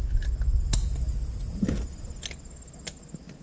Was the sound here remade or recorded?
recorded